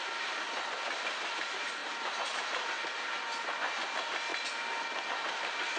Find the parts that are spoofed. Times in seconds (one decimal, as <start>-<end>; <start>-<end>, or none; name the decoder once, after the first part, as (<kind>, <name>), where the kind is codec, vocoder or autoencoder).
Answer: 1.8-2.7 (vocoder, BigVGAN v2)